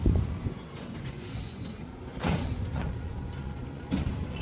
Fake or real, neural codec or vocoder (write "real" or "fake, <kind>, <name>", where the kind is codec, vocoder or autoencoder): fake, vocoder, Vocos